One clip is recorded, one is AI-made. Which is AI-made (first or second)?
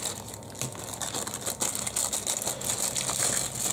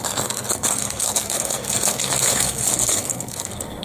second